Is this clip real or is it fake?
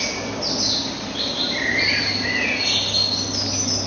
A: real